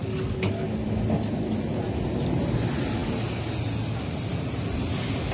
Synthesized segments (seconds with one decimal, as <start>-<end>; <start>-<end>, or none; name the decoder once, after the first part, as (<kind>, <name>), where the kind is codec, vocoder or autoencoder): 0.0-0.6 (codec, DAC)